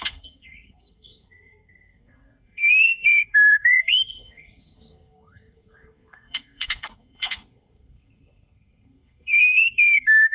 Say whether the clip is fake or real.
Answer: fake